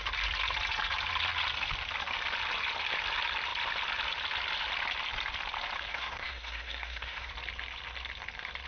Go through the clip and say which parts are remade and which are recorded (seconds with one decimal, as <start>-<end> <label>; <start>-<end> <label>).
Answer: 0.0-5.9 recorded; 5.9-7.3 remade; 7.3-8.7 recorded